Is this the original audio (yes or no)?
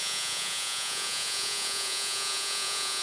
no